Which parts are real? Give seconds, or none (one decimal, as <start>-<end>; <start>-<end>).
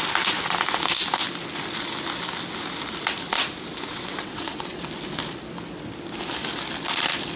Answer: 0.0-3.9; 4.8-7.4